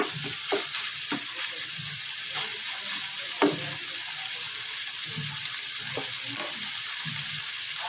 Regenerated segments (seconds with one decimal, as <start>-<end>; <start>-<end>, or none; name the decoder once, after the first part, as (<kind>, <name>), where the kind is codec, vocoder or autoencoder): 0.5-1.6 (vocoder, BigVGAN v2)